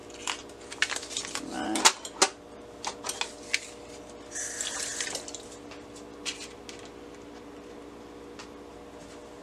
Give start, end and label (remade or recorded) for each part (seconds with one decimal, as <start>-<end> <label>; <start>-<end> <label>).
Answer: 0.0-9.4 recorded